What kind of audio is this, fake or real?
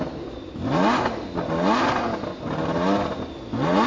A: real